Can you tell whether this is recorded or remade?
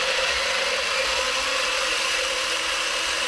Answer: recorded